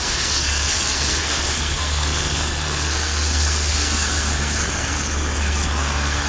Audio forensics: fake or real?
fake